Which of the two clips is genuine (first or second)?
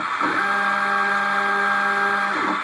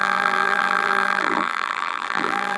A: first